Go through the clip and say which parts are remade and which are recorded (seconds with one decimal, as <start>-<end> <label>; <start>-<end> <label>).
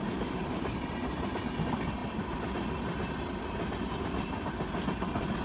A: 0.0-0.7 remade; 0.7-5.4 recorded